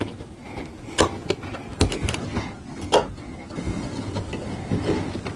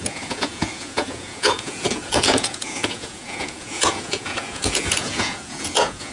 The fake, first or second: second